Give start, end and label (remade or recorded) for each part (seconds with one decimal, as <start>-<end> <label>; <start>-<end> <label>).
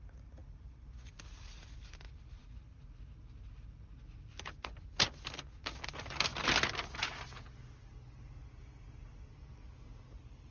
0.0-10.5 recorded